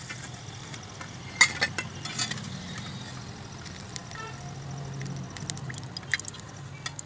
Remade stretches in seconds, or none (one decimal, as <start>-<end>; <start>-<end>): none